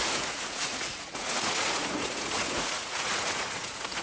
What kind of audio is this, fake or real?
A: fake